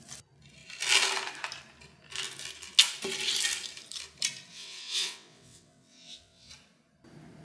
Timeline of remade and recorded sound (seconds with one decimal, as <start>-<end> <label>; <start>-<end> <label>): 0.0-4.5 recorded; 4.5-6.5 remade; 6.5-7.4 recorded